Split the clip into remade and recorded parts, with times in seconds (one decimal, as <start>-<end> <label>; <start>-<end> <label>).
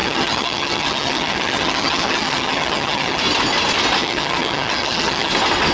0.0-3.2 remade; 3.2-4.0 recorded; 4.0-5.3 remade; 5.3-5.7 recorded